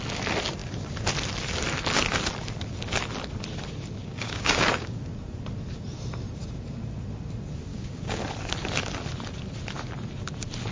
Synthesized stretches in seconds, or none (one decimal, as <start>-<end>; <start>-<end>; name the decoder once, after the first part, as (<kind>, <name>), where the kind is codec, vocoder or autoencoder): 4.0-5.0 (codec, DAC); 7.7-8.2

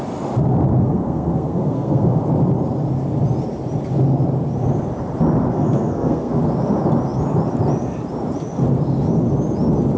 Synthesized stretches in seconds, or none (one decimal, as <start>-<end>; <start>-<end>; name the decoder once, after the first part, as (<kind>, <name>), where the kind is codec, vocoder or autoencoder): 0.8-2.2 (codec, SNAC); 5.5-6.4